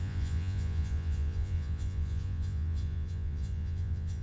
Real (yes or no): no